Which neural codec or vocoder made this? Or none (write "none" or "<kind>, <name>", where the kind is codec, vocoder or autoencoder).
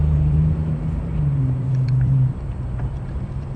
vocoder, BigVGAN v2